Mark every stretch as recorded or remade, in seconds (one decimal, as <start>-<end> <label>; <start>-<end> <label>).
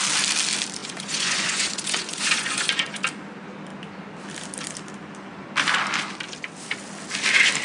0.0-0.8 recorded; 0.8-3.0 remade; 3.0-7.6 recorded